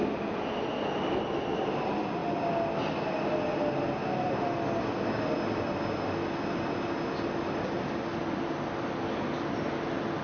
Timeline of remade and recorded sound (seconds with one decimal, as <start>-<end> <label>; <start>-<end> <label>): 0.0-10.2 recorded